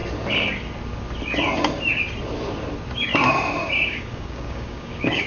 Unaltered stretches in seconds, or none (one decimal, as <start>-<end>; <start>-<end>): 0.0-3.6